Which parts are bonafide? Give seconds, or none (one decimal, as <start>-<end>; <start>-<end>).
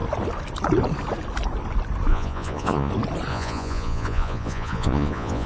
0.0-2.1; 2.9-3.3